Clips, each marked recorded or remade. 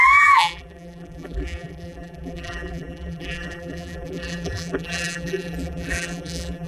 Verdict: remade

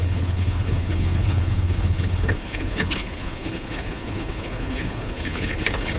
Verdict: remade